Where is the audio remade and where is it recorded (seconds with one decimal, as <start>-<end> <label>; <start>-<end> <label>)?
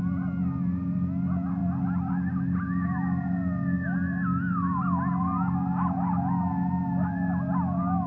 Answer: 0.0-8.1 recorded